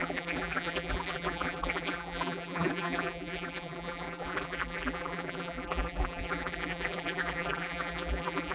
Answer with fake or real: fake